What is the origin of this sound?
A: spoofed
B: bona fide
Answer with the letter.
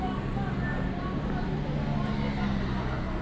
B